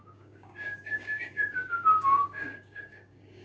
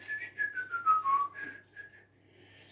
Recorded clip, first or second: second